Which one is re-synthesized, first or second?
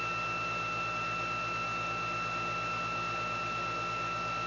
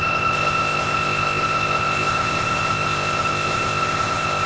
second